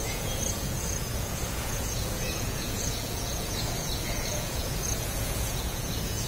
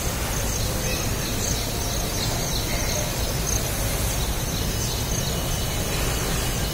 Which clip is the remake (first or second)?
first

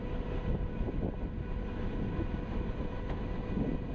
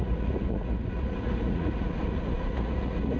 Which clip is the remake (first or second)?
second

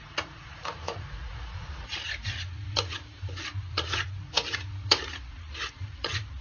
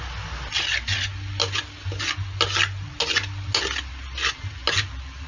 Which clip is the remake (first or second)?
first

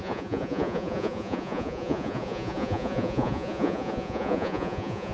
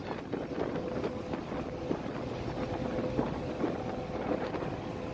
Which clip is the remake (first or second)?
first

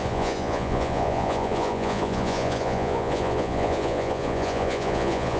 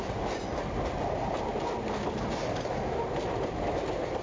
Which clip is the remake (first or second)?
first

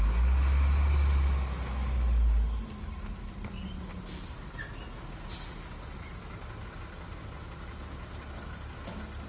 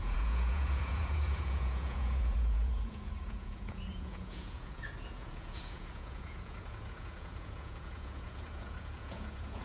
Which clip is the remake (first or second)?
second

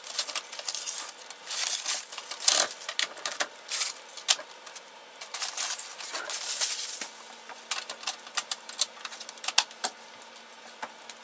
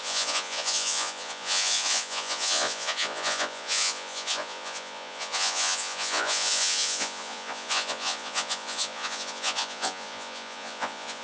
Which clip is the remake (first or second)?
second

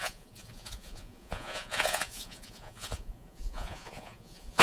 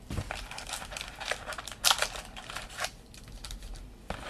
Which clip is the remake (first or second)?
first